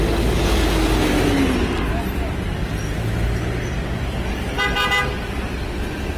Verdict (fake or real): real